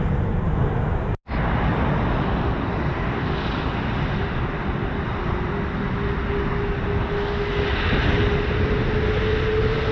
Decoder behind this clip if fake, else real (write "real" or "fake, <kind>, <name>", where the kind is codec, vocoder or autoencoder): real